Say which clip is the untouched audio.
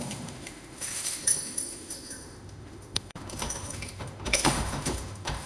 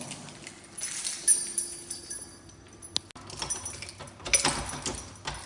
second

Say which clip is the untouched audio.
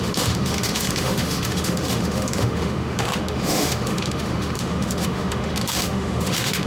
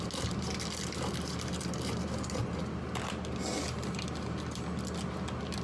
second